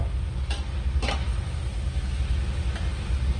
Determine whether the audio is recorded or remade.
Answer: recorded